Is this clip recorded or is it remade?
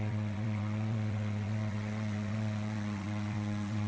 remade